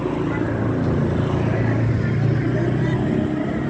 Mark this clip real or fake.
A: real